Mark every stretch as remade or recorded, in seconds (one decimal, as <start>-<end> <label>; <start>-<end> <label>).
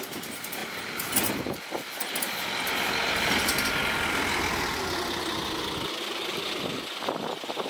0.0-7.7 recorded